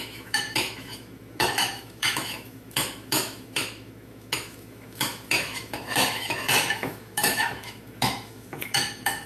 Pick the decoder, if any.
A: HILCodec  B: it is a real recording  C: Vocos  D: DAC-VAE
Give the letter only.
D